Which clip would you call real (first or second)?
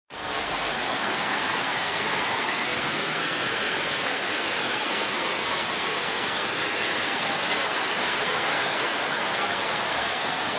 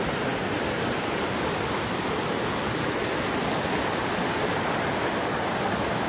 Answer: second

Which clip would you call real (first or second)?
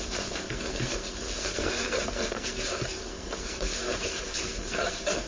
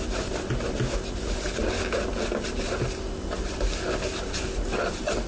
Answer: second